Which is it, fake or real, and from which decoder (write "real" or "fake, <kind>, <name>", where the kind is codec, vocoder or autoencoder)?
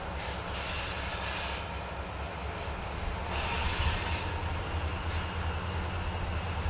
real